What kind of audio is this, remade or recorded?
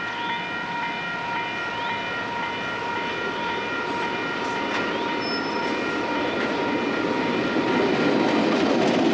recorded